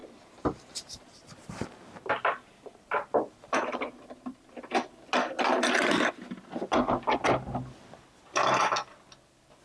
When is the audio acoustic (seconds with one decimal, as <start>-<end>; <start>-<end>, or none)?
3.8-4.3; 4.9-9.6